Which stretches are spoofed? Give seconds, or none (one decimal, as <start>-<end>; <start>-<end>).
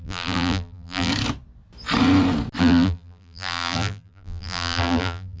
0.0-1.1; 2.6-5.4